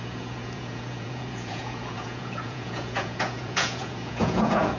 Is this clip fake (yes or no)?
yes